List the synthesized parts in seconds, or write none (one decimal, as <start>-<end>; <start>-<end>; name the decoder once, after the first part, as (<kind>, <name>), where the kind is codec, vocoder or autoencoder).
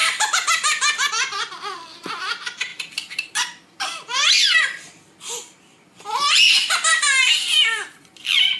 1.1-8.6 (vocoder, BigVGAN v2)